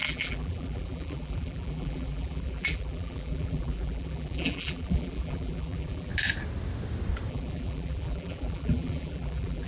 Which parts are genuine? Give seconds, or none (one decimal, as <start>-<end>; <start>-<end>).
6.1-7.3